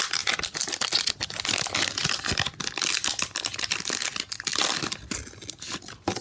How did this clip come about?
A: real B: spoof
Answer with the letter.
A